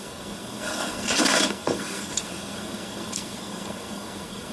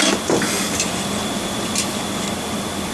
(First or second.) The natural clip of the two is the second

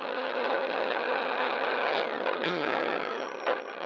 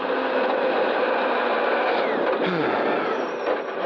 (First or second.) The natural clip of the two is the second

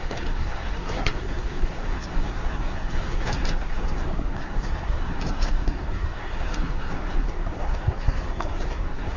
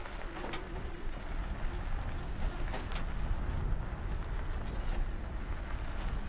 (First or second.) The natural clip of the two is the second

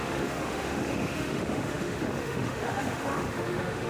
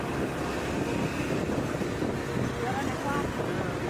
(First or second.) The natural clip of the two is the second